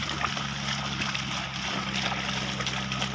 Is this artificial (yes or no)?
no